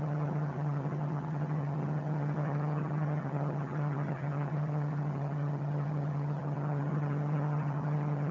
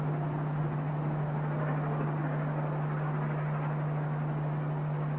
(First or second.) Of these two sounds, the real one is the second